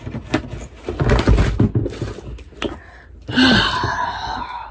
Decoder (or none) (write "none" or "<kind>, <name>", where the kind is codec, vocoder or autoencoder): none